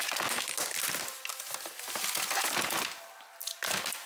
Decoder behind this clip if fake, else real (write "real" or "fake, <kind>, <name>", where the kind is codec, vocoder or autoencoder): real